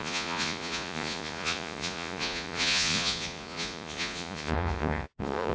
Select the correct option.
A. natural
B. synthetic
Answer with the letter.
B